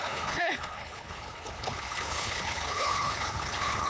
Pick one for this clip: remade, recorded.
remade